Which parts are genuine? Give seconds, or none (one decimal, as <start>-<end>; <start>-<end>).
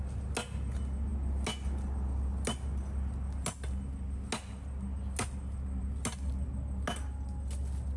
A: 0.0-8.0